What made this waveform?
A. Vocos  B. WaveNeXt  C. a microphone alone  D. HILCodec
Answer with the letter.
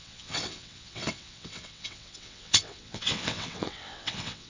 B